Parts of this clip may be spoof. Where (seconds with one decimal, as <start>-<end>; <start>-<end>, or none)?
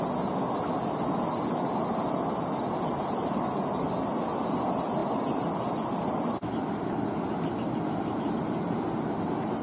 none